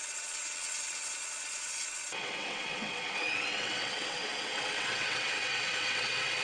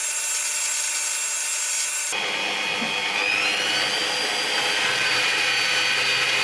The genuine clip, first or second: second